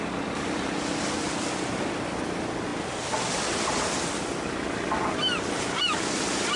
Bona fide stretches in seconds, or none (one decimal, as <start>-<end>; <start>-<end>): 0.0-6.6